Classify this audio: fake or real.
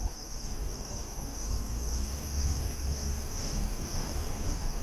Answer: fake